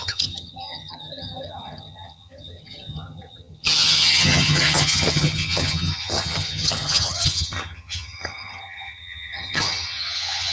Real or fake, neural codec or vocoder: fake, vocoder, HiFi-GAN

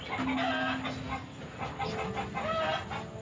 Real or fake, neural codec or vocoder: real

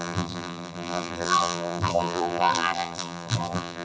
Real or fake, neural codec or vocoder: fake, vocoder, BigVGAN v2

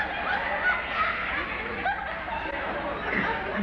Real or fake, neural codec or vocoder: real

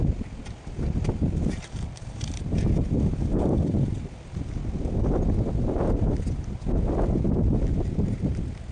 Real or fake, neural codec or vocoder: real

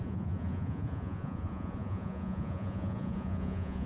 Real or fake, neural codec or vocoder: fake, vocoder, Vocos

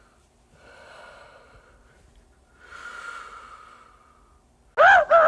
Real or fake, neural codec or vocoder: real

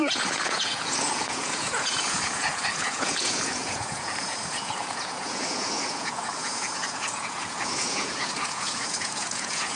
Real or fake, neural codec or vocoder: fake, vocoder, Vocos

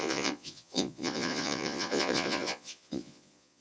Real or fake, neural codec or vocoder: fake, vocoder, Vocos